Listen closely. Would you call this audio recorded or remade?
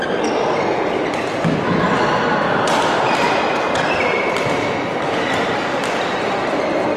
recorded